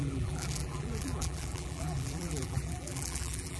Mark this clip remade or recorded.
remade